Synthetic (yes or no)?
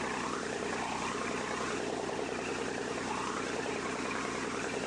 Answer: yes